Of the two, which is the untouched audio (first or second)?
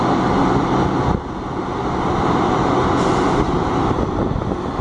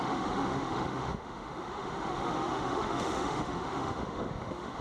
first